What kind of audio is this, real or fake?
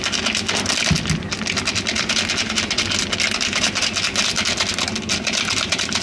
real